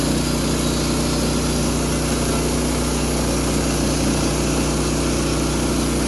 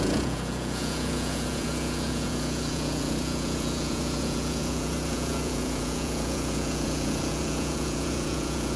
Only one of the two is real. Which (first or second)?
first